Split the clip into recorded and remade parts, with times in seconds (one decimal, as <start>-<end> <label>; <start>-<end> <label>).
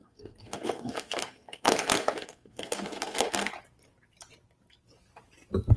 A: 0.0-3.5 remade; 3.5-5.8 recorded